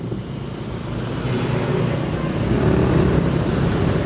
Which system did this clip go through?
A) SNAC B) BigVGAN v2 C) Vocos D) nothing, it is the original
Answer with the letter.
D